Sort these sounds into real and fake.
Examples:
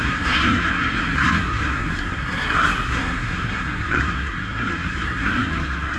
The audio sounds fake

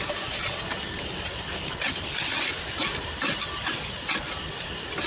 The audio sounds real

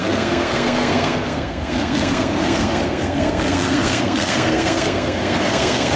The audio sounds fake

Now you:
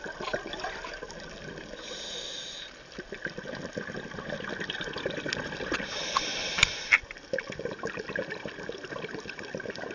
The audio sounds real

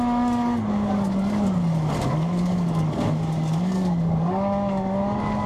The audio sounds fake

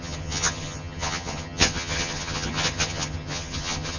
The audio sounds fake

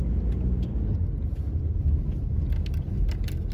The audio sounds real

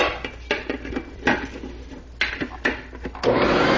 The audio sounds real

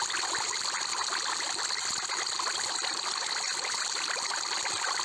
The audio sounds real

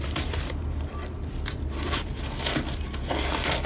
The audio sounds real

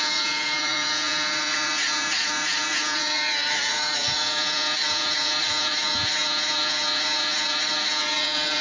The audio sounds fake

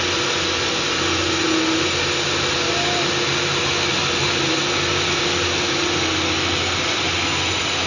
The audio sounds real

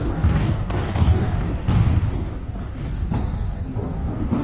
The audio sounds fake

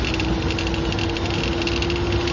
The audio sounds real